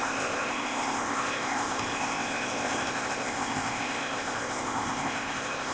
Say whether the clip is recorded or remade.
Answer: remade